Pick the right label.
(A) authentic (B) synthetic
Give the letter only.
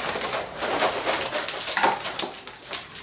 A